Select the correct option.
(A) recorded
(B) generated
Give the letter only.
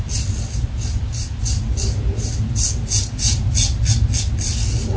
A